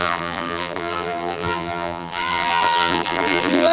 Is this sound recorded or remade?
remade